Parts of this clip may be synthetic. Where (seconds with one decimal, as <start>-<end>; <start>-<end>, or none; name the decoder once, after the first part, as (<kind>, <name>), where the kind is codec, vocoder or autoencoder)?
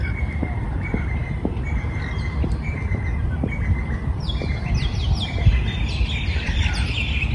none